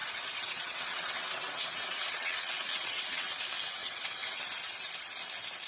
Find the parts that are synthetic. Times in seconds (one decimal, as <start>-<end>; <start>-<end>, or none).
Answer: 0.0-3.4; 3.8-4.4